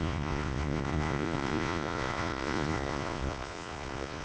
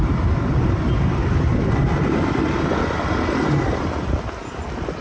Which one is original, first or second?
second